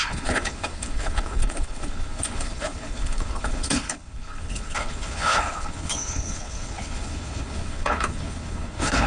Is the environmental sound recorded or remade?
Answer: remade